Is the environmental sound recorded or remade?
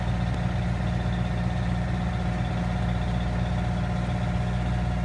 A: recorded